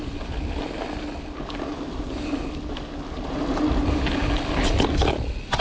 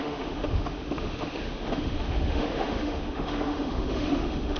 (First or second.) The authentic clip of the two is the first